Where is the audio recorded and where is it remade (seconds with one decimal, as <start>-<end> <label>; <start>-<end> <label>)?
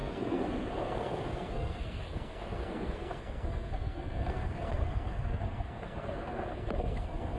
0.0-7.4 remade